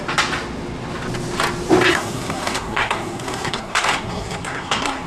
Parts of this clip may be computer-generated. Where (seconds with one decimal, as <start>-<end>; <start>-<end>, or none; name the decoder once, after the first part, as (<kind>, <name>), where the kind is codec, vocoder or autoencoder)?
1.9-5.1 (codec, SNAC)